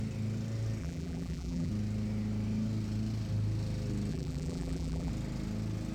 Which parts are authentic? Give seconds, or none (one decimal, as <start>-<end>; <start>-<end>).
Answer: 0.0-0.8; 1.7-4.1; 5.1-5.9